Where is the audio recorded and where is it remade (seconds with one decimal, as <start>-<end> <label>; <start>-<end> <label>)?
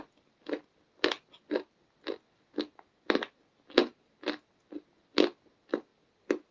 0.0-6.5 recorded